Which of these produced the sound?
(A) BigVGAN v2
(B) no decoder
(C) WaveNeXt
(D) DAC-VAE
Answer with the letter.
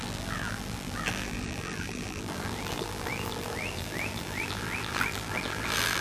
A